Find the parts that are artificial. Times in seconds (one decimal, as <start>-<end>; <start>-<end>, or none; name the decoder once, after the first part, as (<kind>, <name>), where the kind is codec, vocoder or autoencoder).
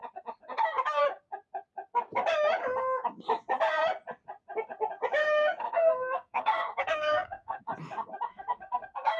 5.2-7.6 (codec, SNAC); 8.3-9.2